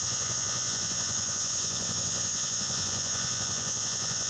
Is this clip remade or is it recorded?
remade